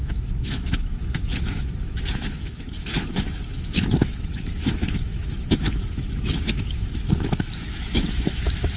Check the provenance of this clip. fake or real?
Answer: fake